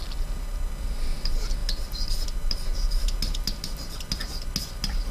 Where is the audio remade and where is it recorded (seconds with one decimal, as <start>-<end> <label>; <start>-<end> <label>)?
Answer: 0.0-5.1 recorded